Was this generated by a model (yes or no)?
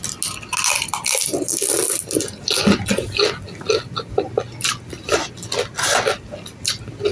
no